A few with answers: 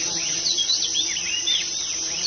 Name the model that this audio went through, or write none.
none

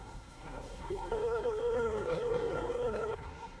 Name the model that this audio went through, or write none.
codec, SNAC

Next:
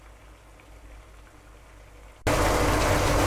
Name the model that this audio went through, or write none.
none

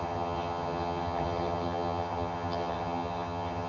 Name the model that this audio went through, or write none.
vocoder, HiFi-GAN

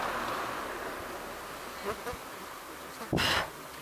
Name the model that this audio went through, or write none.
none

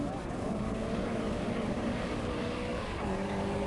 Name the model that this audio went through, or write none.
codec, DAC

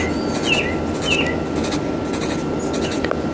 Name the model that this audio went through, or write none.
none